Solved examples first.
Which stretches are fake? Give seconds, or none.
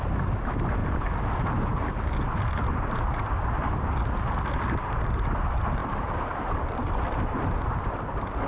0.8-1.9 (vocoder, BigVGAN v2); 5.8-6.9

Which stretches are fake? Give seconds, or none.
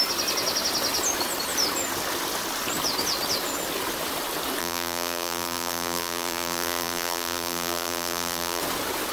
4.6-8.6 (vocoder, BigVGAN v2)